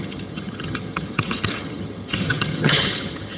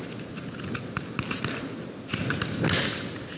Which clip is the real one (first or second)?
second